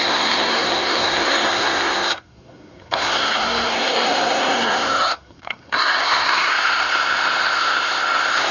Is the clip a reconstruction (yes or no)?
yes